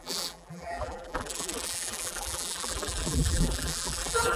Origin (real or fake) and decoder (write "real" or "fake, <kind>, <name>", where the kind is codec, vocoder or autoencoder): fake, vocoder, BigVGAN v2